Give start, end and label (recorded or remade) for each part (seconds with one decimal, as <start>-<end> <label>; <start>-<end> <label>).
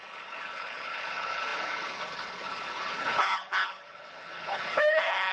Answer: 0.0-5.3 remade